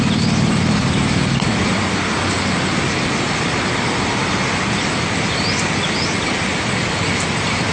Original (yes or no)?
yes